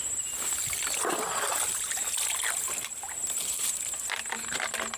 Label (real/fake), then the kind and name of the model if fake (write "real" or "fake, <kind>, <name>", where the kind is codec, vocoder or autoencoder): real